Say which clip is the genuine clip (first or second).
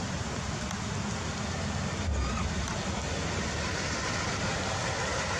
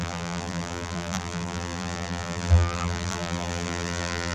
first